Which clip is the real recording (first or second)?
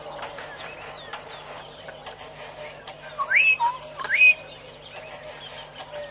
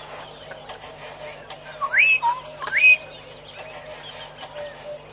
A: second